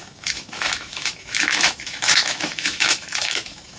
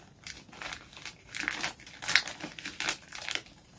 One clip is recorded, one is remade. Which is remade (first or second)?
first